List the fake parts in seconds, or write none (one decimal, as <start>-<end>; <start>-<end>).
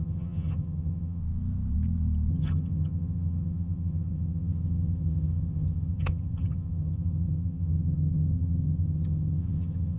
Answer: 0.0-1.2; 2.3-10.0